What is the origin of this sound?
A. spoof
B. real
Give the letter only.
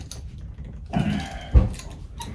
B